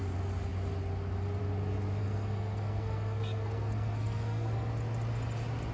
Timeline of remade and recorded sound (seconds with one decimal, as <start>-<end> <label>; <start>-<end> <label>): 0.0-2.0 recorded; 2.0-4.7 remade; 4.7-5.7 recorded